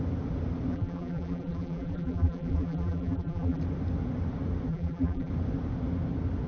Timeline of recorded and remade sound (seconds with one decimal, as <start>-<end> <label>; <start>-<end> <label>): 0.0-0.7 recorded; 0.7-3.6 remade; 3.6-4.7 recorded; 4.7-5.3 remade; 5.3-6.5 recorded